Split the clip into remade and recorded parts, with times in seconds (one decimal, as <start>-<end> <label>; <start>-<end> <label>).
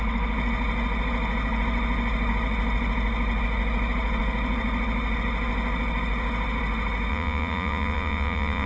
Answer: 0.0-7.1 recorded; 7.1-8.7 remade